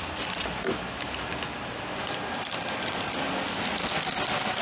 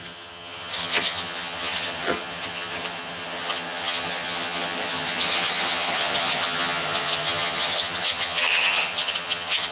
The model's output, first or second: second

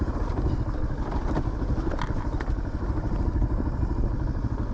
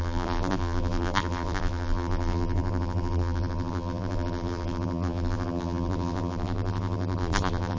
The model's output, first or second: second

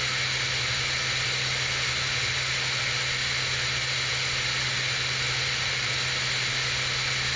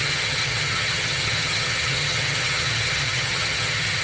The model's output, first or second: second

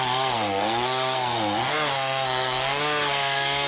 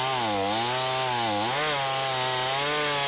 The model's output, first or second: first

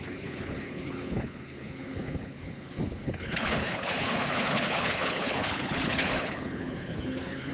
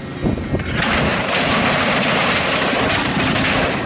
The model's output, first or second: first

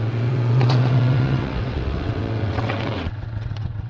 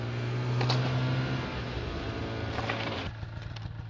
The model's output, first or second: first